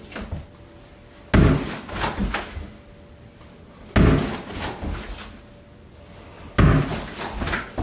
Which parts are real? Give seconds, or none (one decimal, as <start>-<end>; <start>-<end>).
0.0-7.8